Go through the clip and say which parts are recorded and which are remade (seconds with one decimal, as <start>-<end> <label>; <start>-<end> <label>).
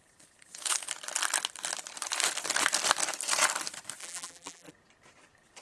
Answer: 0.0-4.0 recorded; 4.0-4.7 remade; 4.7-5.6 recorded